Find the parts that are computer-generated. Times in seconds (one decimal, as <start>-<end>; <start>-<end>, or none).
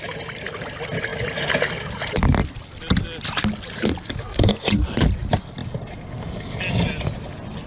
none